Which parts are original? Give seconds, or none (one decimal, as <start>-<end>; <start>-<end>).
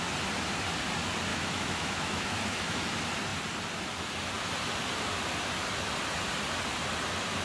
0.0-1.3; 2.8-7.4